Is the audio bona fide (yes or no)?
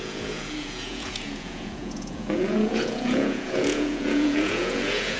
no